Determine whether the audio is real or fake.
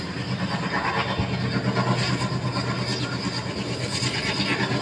real